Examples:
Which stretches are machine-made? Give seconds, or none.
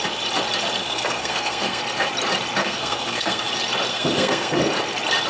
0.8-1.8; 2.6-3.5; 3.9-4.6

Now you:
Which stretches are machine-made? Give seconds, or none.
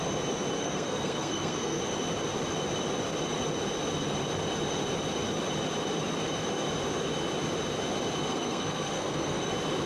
0.6-1.8; 8.3-9.5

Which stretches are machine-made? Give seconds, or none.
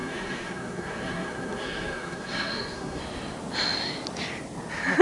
0.0-3.0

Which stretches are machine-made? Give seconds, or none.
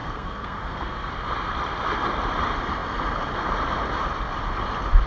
0.0-1.1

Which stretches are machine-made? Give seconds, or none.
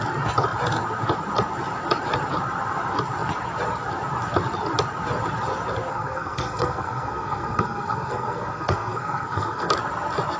5.9-9.7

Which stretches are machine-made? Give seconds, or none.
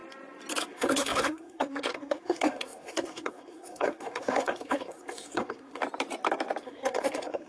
0.6-5.8; 6.6-7.5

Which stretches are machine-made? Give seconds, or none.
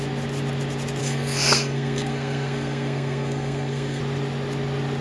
1.0-4.0